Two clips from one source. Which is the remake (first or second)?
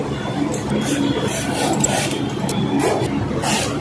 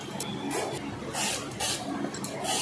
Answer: first